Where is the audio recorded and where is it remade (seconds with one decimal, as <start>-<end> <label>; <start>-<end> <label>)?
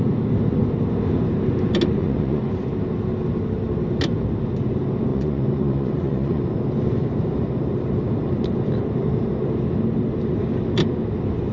0.0-2.0 recorded; 2.0-2.5 remade; 2.5-5.1 recorded; 5.1-6.4 remade; 6.4-11.5 recorded